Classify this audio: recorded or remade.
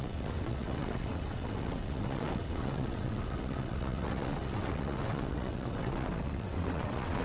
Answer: remade